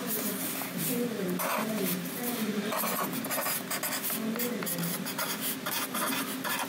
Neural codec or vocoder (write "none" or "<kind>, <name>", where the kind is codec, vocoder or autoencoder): none